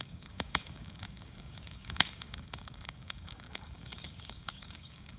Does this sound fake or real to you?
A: fake